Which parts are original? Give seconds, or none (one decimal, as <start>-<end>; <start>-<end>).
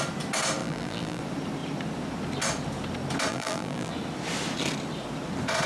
0.0-0.6; 1.2-3.3; 3.9-5.7